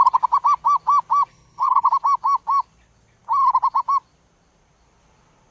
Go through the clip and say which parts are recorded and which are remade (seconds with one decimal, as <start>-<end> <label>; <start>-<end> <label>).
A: 0.0-1.3 recorded; 1.3-1.9 remade; 1.9-5.5 recorded